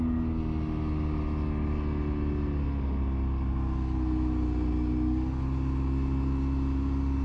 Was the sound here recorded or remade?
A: recorded